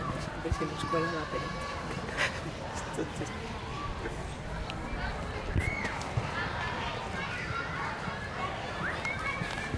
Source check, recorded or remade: recorded